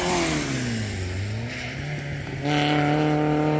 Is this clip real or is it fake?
real